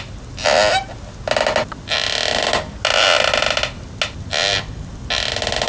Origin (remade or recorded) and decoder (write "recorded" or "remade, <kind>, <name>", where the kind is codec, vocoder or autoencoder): recorded